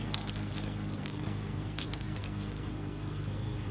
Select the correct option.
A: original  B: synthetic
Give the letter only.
B